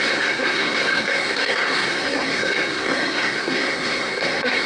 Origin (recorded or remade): remade